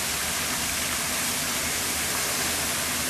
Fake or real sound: real